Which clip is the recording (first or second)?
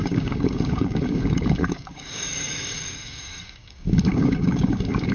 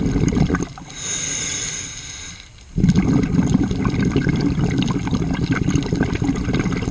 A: second